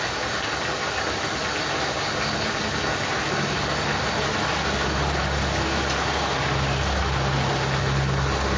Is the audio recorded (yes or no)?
yes